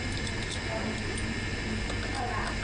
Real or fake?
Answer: real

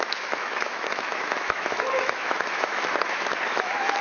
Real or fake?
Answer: fake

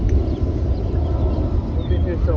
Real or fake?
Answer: real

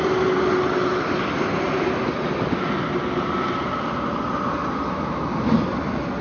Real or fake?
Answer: real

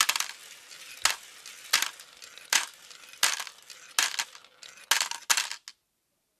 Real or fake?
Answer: real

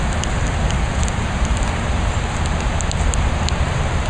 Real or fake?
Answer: real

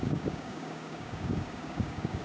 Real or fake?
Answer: fake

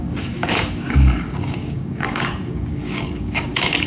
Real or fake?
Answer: fake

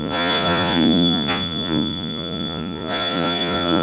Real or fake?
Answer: fake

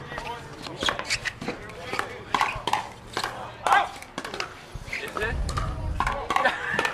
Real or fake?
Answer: real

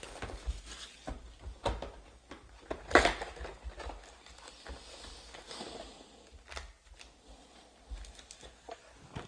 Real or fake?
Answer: real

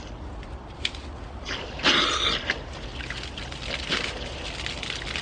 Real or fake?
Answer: real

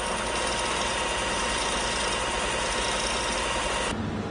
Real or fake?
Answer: real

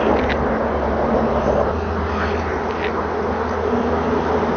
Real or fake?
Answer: real